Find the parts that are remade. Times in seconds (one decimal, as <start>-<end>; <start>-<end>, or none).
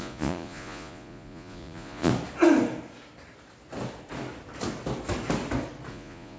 0.0-2.1; 5.9-6.4